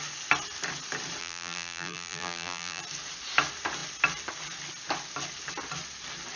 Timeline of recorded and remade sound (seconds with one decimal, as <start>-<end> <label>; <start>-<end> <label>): 0.0-1.2 recorded; 1.2-2.8 remade; 2.8-6.4 recorded